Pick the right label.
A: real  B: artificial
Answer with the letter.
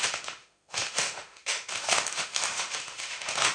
B